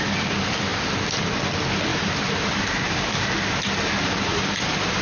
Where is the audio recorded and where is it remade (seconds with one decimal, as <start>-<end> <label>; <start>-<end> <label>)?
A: 0.0-1.9 recorded; 1.9-5.0 remade